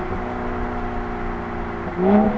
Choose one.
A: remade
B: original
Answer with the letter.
B